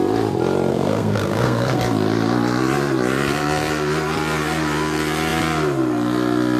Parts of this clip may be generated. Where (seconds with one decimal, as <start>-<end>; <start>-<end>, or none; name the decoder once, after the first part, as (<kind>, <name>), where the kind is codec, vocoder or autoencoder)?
0.7-1.8 (codec, SNAC)